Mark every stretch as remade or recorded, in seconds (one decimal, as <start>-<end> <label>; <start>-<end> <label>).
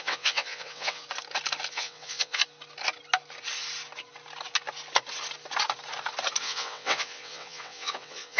0.0-1.0 remade; 1.0-1.7 recorded; 1.7-2.4 remade; 2.4-6.4 recorded; 6.4-8.4 remade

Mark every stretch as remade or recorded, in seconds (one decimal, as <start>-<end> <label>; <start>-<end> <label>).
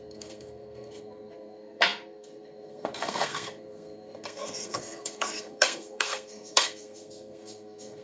0.0-8.0 remade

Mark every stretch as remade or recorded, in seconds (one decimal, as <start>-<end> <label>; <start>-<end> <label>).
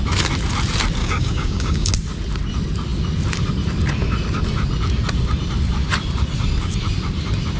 0.0-1.0 recorded; 1.0-1.9 remade; 1.9-7.6 recorded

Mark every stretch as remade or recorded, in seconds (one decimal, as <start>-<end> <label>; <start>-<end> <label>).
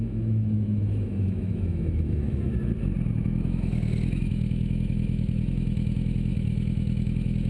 0.0-2.5 remade; 2.5-3.1 recorded; 3.1-7.5 remade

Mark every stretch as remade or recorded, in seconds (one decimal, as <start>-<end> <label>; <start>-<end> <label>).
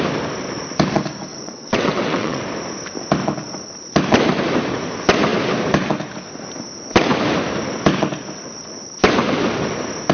0.0-1.3 recorded; 1.3-2.4 remade; 2.4-10.1 recorded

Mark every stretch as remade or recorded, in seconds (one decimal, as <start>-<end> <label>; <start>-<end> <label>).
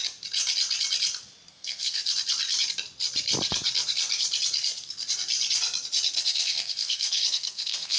0.0-1.5 recorded; 1.5-2.0 remade; 2.0-6.2 recorded; 6.2-8.0 remade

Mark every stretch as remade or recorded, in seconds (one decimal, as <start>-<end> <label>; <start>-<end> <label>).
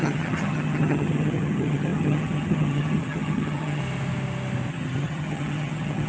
0.0-3.8 remade; 3.8-4.7 recorded; 4.7-6.1 remade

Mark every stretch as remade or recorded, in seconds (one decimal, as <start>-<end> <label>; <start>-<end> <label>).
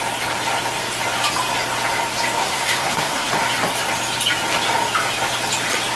0.0-2.4 recorded; 2.4-3.3 remade; 3.3-6.0 recorded